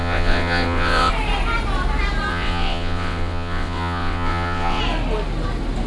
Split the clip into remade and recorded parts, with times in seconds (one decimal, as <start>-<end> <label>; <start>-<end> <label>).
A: 0.0-1.1 remade; 1.1-2.3 recorded; 2.3-4.8 remade; 4.8-5.9 recorded

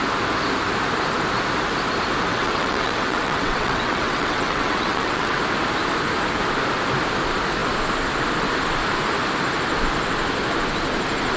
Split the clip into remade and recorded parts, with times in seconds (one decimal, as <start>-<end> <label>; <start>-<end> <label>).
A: 0.0-2.3 recorded; 2.3-5.4 remade; 5.4-11.4 recorded

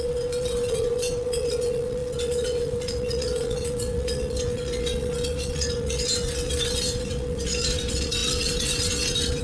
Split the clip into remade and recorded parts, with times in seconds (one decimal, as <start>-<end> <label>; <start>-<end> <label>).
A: 0.0-9.4 remade

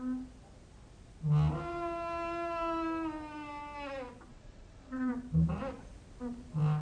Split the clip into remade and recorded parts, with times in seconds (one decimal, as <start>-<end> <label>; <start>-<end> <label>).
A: 0.0-4.3 recorded; 4.3-5.1 remade; 5.1-6.8 recorded

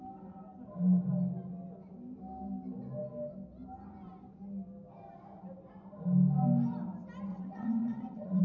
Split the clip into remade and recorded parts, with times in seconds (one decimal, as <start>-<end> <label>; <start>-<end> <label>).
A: 0.0-7.3 recorded; 7.3-8.4 remade